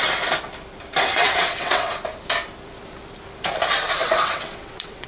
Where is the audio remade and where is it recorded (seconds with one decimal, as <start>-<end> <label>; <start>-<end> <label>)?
0.0-1.1 recorded; 1.1-1.9 remade; 1.9-4.0 recorded; 4.0-5.1 remade